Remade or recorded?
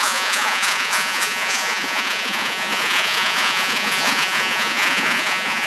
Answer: remade